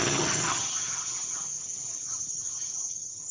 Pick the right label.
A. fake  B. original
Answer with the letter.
A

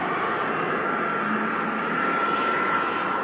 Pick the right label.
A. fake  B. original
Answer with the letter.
B